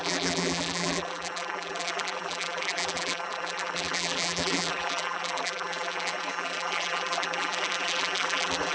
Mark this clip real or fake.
fake